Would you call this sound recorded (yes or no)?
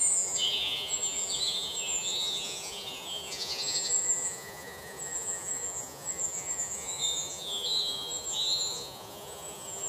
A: no